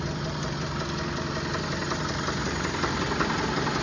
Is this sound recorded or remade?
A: recorded